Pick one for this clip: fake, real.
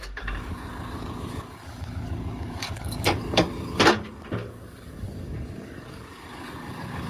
fake